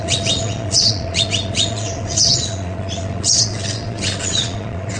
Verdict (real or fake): fake